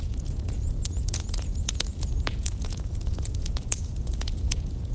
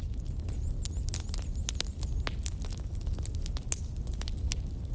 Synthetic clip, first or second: first